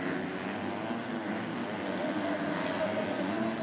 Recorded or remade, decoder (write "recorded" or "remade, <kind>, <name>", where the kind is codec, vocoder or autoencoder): recorded